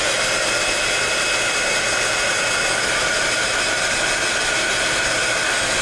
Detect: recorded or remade recorded